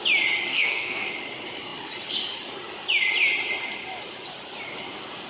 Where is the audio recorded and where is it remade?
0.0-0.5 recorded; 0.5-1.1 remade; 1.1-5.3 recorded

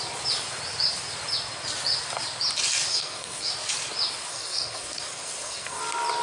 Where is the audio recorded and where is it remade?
0.0-2.9 recorded; 2.9-3.5 remade; 3.5-4.3 recorded; 4.3-5.8 remade; 5.8-6.2 recorded

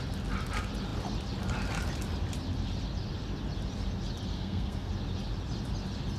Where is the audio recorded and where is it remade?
0.0-4.3 recorded; 4.3-4.9 remade; 4.9-6.2 recorded

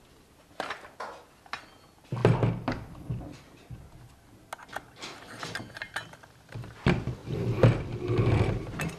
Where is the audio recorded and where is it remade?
0.0-9.0 recorded

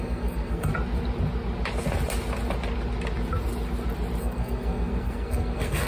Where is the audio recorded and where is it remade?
0.0-0.7 remade; 0.7-4.2 recorded; 4.2-5.9 remade

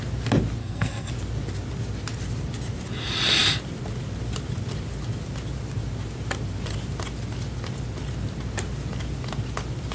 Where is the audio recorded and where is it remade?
0.0-0.6 recorded; 0.6-1.1 remade; 1.1-9.9 recorded

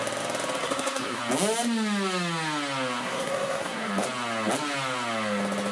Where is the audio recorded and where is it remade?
0.0-0.6 recorded; 0.6-1.2 remade; 1.2-3.0 recorded; 3.0-3.9 remade; 3.9-5.7 recorded

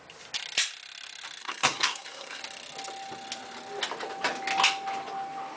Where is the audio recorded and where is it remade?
0.0-1.4 recorded; 1.4-2.4 remade; 2.4-5.6 recorded